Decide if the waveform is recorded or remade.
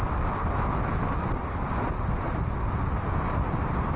recorded